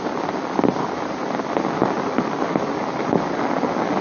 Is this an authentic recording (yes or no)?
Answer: yes